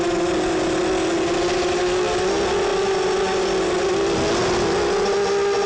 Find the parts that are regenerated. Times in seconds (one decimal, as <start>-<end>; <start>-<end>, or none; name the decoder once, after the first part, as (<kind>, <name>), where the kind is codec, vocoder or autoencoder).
none